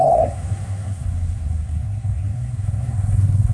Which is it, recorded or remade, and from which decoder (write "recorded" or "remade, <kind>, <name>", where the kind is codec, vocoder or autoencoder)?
remade, codec, SNAC